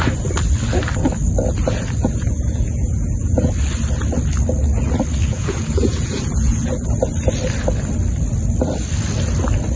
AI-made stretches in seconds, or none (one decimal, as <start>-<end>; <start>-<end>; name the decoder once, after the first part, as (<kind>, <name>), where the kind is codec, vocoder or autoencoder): 2.0-3.4 (vocoder, Vocos); 5.3-6.7